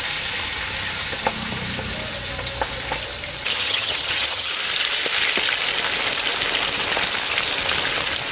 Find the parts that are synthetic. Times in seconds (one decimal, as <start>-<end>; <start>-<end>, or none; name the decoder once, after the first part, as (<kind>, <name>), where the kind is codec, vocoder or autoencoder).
3.5-4.5 (vocoder, HiFi-GAN)